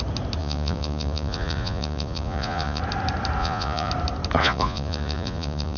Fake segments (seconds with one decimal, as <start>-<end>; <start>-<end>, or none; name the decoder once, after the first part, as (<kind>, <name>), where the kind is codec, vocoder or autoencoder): 0.4-2.8 (vocoder, Vocos); 3.4-3.9; 4.4-5.8